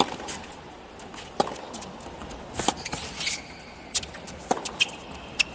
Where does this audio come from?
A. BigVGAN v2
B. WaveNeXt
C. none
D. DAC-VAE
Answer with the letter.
C